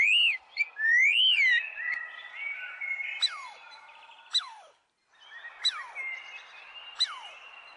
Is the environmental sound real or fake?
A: real